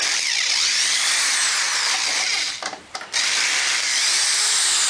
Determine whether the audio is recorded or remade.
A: remade